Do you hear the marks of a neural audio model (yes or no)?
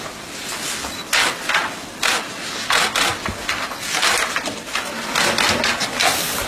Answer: no